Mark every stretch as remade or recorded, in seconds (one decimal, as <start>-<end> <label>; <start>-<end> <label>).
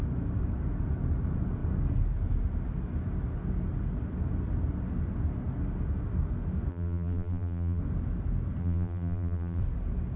0.0-6.7 recorded; 6.7-7.8 remade; 7.8-8.6 recorded; 8.6-9.6 remade; 9.6-10.2 recorded